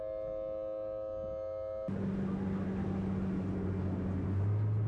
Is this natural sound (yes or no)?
yes